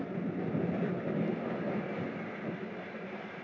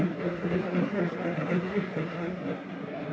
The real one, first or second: first